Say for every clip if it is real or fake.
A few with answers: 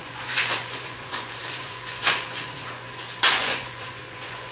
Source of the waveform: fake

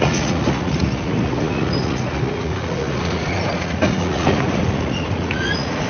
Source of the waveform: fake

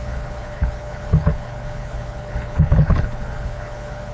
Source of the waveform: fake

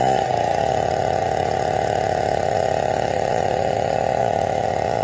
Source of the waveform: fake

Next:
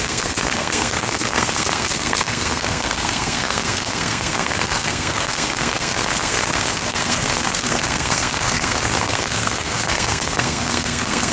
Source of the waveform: fake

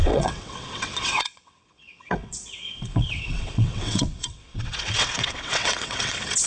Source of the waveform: fake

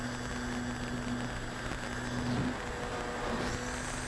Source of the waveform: real